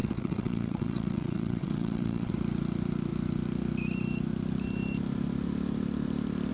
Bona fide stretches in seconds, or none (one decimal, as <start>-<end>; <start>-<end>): 2.3-6.5